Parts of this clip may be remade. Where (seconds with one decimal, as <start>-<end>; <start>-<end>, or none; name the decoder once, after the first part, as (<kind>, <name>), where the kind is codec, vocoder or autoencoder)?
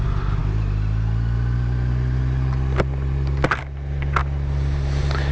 none